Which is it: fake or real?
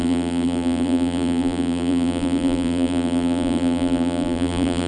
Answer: fake